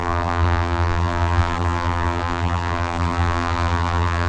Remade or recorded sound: remade